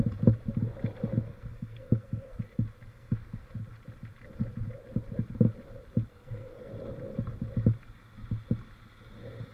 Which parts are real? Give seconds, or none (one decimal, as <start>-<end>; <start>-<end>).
0.0-1.1; 2.4-2.9; 3.5-6.1; 6.7-9.5